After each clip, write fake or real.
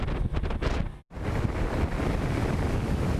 real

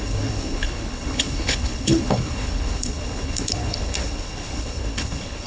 fake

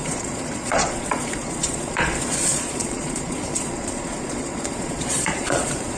fake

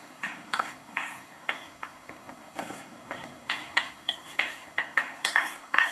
fake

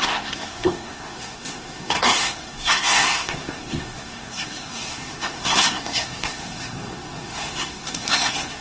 fake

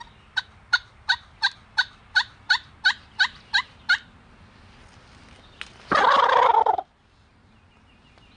real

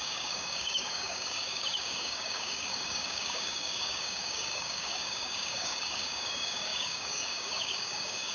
fake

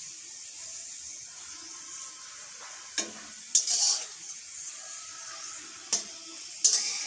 real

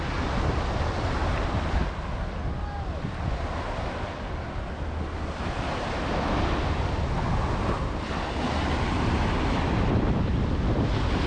real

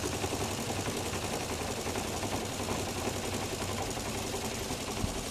real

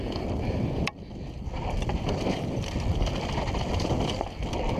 fake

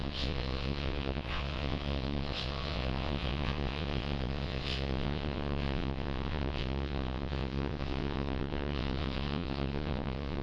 fake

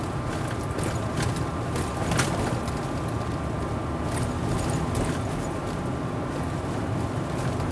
real